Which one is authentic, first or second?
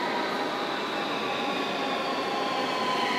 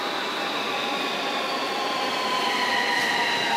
first